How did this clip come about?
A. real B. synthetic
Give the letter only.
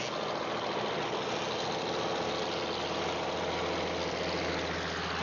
A